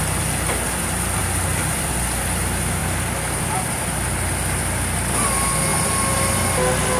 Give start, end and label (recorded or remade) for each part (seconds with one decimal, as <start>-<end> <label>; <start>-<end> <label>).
0.0-1.2 recorded; 1.2-2.2 remade; 2.2-7.0 recorded